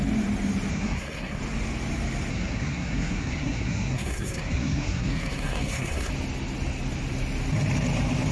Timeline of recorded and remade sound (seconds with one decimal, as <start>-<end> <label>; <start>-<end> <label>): 0.0-0.7 recorded; 0.7-1.4 remade; 1.4-2.3 recorded; 2.3-6.1 remade; 6.1-8.3 recorded